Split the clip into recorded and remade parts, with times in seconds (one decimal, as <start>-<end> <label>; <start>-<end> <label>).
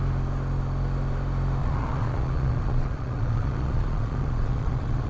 0.0-1.6 recorded; 1.6-5.1 remade